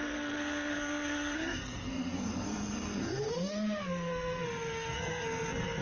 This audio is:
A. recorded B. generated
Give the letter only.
B